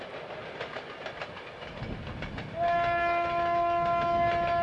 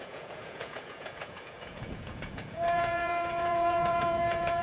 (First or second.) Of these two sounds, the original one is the first